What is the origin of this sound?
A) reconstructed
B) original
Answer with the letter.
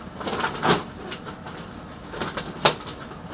B